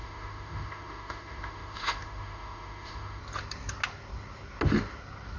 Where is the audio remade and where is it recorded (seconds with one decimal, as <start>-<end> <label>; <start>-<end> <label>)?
0.0-3.2 remade; 3.2-5.4 recorded